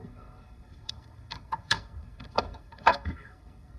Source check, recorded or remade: remade